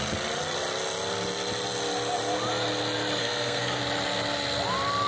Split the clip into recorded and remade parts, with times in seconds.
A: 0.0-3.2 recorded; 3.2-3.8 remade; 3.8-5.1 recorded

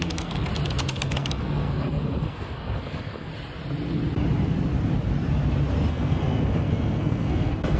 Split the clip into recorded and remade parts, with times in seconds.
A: 0.0-0.5 remade; 0.5-1.0 recorded; 1.0-3.3 remade; 3.3-5.9 recorded; 5.9-7.8 remade

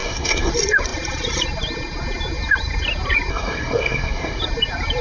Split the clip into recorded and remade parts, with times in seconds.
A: 0.0-0.5 remade; 0.5-3.3 recorded; 3.3-4.4 remade; 4.4-5.0 recorded

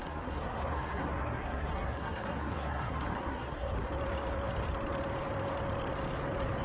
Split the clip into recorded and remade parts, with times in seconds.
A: 0.0-3.9 remade; 3.9-6.6 recorded

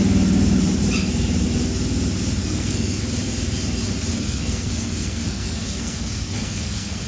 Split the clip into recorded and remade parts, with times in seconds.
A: 0.0-2.4 recorded; 2.4-3.0 remade; 3.0-4.1 recorded; 4.1-7.1 remade

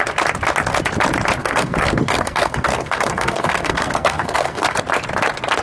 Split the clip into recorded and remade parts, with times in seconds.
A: 0.0-1.4 recorded; 1.4-4.8 remade; 4.8-5.6 recorded